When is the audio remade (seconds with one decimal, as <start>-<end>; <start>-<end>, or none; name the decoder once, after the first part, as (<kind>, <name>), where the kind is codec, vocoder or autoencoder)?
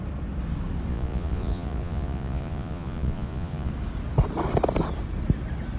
0.9-3.7 (vocoder, Vocos)